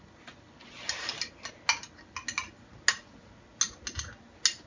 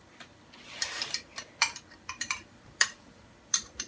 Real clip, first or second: first